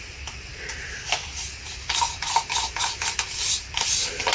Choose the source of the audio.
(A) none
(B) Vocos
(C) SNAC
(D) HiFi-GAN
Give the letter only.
A